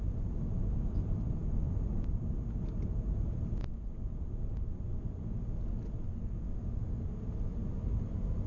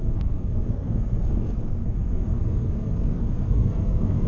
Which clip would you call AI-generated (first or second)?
second